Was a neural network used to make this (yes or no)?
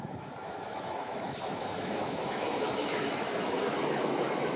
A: yes